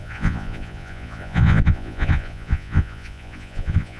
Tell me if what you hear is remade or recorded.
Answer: remade